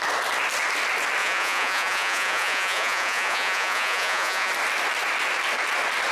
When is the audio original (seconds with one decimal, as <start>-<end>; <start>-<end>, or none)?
0.0-1.2; 4.5-6.1